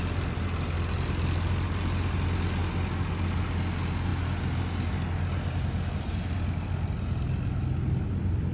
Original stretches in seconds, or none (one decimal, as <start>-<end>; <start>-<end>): 0.0-8.5